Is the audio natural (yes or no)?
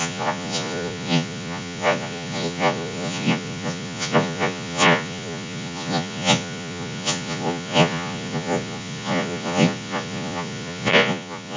no